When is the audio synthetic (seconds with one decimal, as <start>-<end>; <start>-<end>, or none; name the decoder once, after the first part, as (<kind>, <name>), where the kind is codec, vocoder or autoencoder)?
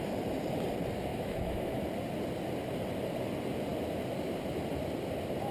1.1-1.7 (autoencoder, DAC-VAE)